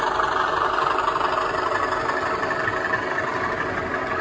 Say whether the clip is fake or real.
real